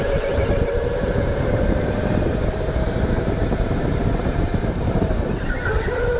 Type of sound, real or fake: fake